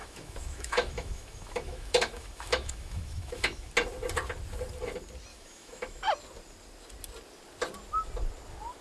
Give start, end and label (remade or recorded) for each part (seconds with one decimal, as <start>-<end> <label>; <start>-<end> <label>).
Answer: 0.0-3.7 remade; 3.7-5.3 recorded; 5.3-6.0 remade; 6.0-8.8 recorded